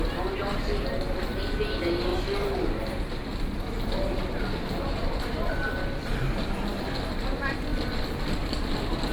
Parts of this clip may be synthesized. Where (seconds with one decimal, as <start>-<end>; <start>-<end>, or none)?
2.1-4.3; 5.0-6.3; 7.7-9.1